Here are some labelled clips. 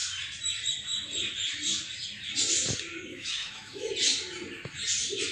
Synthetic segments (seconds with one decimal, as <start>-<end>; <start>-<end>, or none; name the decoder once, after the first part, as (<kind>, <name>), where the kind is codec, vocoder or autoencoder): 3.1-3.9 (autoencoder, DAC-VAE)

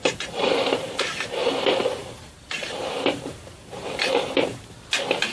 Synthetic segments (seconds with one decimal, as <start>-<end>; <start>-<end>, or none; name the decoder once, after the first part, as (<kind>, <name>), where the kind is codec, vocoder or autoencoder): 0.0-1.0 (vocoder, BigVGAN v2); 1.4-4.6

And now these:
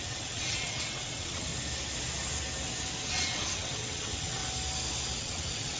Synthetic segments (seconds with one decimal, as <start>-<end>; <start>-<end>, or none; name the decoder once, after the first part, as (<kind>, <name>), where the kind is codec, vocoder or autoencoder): 0.0-1.5 (vocoder, WaveNeXt); 3.1-4.4; 5.2-5.8

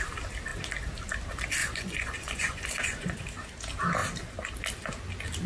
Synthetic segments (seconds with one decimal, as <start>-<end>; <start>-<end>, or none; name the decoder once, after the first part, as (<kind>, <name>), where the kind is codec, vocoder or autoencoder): 1.6-3.2 (vocoder, Vocos)